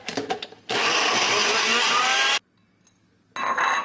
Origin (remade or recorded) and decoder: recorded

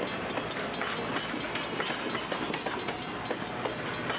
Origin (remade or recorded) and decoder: recorded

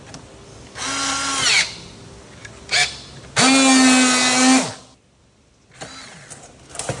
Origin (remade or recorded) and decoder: recorded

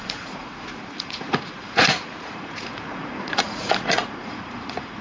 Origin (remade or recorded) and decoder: remade, vocoder, Vocos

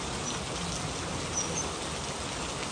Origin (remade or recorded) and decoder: recorded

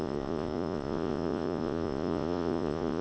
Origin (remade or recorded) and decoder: remade, vocoder, Vocos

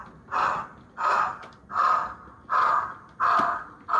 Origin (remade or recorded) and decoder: recorded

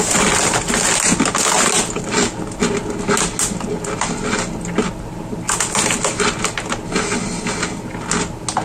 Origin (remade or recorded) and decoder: recorded